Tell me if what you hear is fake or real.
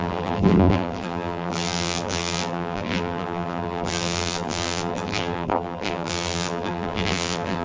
fake